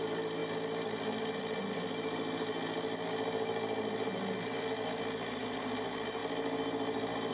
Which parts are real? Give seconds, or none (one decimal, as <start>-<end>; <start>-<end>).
0.0-7.3